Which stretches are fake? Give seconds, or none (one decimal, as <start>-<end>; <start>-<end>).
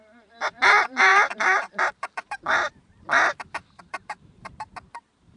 0.0-3.3; 3.8-5.4